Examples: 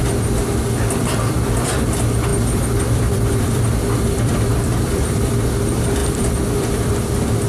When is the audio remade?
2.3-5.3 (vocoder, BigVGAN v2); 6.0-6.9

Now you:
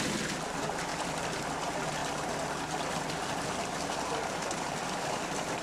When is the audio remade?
0.9-1.6 (vocoder, BigVGAN v2)

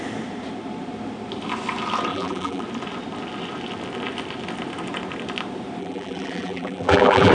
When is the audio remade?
2.1-2.6 (vocoder, BigVGAN v2); 5.8-7.3

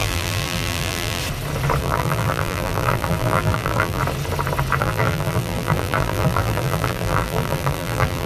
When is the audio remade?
0.0-1.2 (vocoder, BigVGAN v2); 1.8-4.0; 4.8-8.3

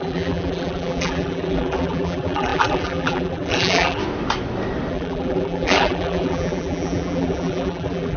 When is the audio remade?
0.0-4.0 (vocoder, BigVGAN v2); 4.9-8.2

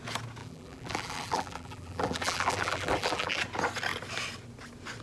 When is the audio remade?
0.4-3.4 (vocoder, BigVGAN v2)

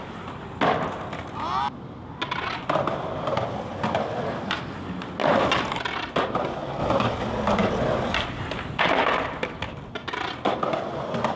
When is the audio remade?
none